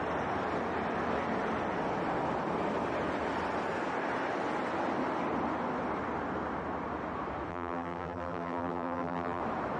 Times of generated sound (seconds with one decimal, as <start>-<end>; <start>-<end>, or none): 7.5-9.4

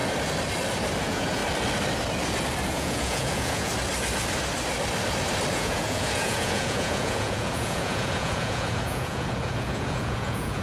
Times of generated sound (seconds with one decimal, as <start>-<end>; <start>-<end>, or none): 1.0-1.4; 2.7-3.7; 5.5-10.6